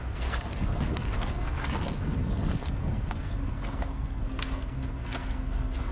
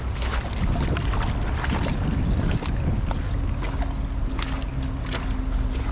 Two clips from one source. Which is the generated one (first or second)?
first